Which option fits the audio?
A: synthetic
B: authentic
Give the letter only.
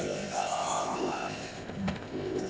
A